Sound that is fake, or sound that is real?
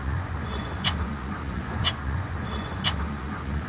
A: fake